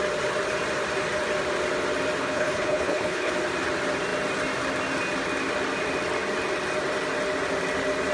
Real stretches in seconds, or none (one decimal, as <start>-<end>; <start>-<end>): 0.0-2.2; 3.3-8.1